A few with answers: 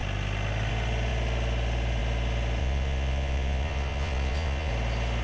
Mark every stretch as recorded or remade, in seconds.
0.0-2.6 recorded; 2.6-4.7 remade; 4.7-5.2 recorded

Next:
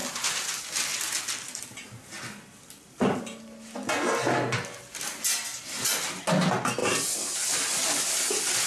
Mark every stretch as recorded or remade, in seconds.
0.0-8.7 recorded

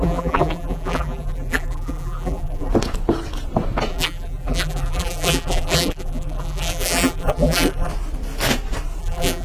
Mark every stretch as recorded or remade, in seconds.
0.0-2.7 remade; 2.7-3.9 recorded; 3.9-7.9 remade; 7.9-9.0 recorded; 9.0-9.4 remade

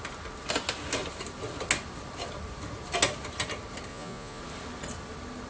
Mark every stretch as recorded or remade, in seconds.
0.0-3.9 recorded; 3.9-4.4 remade; 4.4-5.5 recorded

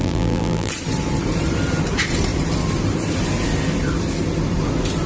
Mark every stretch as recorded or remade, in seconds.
0.0-0.7 remade; 0.7-5.1 recorded